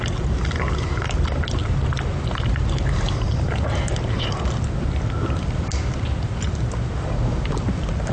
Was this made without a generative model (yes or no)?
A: yes